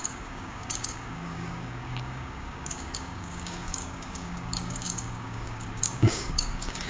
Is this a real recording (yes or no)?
no